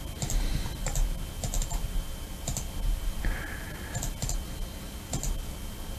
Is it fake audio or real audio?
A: real